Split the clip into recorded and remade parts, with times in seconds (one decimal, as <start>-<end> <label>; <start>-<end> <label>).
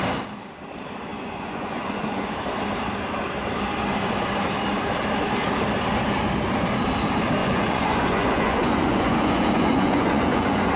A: 0.0-1.1 recorded; 1.1-2.3 remade; 2.3-7.4 recorded; 7.4-10.8 remade